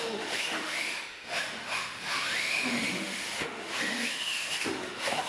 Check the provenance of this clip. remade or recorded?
remade